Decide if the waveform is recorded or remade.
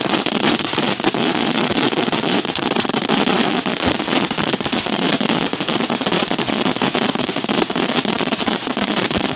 remade